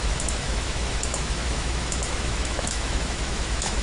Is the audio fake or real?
fake